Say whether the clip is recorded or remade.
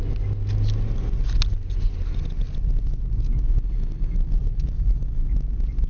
recorded